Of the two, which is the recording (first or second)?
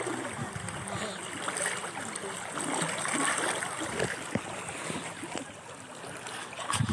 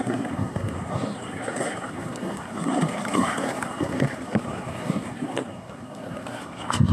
first